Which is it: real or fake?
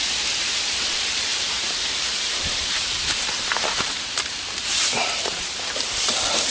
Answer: fake